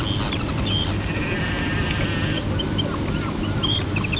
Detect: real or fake real